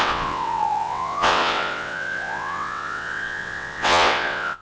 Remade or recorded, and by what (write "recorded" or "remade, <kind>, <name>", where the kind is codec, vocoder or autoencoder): remade, vocoder, WaveNeXt